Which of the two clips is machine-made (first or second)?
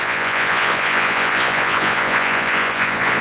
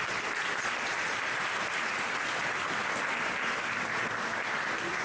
first